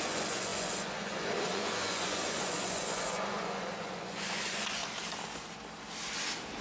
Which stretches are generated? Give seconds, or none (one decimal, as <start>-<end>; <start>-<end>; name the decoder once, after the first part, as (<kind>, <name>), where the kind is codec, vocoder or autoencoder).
0.0-4.8 (vocoder, Vocos)